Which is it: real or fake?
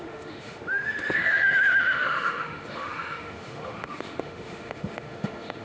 fake